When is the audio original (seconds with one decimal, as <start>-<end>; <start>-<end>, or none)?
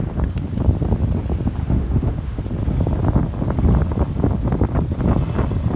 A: 0.0-1.6; 2.4-5.8